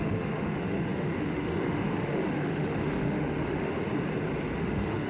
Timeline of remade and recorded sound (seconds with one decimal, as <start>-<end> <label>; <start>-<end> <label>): 0.0-3.9 remade; 3.9-4.6 recorded; 4.6-5.1 remade

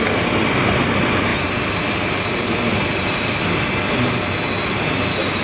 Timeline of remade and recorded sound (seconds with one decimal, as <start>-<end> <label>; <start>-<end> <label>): 0.0-1.3 recorded; 1.3-4.5 remade; 4.5-5.4 recorded

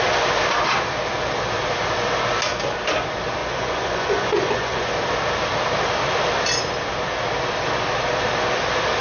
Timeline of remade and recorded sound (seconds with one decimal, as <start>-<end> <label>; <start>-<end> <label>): 0.0-3.4 recorded; 3.4-4.9 remade; 4.9-9.0 recorded

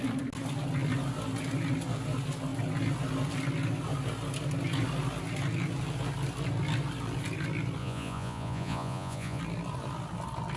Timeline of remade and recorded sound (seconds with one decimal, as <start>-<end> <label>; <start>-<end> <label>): 0.0-7.8 recorded; 7.8-9.4 remade; 9.4-10.6 recorded